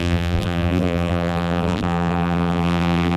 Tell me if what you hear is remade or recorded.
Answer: remade